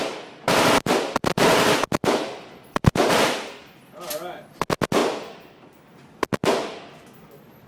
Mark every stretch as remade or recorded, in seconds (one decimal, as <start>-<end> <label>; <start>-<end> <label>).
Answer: 0.0-4.1 remade; 4.1-5.0 recorded; 5.0-5.9 remade; 5.9-7.7 recorded